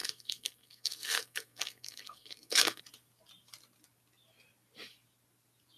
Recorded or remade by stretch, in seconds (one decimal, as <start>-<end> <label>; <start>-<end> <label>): 0.0-2.8 remade; 2.8-5.8 recorded